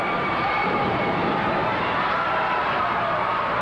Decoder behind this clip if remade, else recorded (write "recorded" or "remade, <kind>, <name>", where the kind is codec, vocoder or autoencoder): remade, vocoder, BigVGAN v2